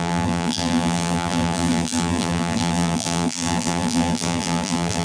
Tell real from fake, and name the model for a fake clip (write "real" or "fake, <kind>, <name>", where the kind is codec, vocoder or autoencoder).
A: fake, vocoder, BigVGAN v2